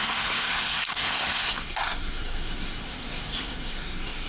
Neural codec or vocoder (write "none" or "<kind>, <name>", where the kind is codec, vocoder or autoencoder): codec, SNAC